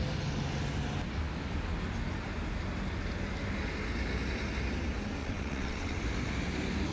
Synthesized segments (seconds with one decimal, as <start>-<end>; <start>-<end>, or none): 5.2-6.0